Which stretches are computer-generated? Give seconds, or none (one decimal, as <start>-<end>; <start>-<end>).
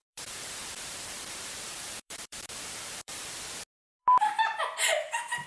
0.0-3.3; 4.0-4.6